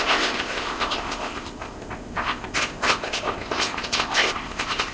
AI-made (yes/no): yes